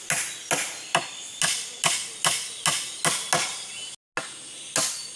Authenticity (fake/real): real